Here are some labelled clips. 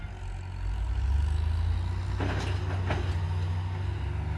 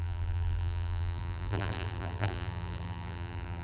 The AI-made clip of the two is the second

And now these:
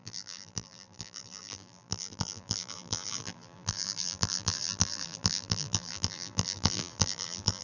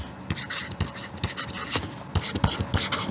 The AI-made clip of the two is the first